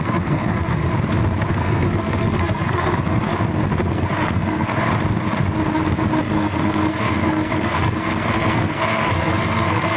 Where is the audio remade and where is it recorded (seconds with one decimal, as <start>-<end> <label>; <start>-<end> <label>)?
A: 0.0-0.8 remade; 0.8-1.5 recorded; 1.5-3.3 remade; 3.3-3.9 recorded; 3.9-4.7 remade; 4.7-6.2 recorded; 6.2-10.0 remade